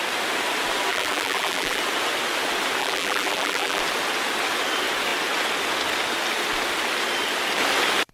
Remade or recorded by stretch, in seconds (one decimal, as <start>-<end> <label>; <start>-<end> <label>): 0.0-0.9 recorded; 0.9-1.8 remade; 1.8-2.8 recorded; 2.8-3.8 remade; 3.8-8.1 recorded